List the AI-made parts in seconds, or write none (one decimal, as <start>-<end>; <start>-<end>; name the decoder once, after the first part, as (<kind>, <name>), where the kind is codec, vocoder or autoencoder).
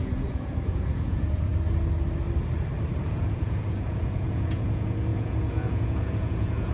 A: 0.0-1.5 (vocoder, Vocos); 3.0-6.7